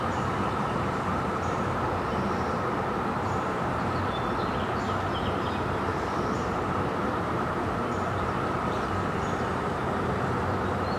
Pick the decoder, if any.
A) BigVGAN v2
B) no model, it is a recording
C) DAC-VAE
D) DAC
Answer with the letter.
A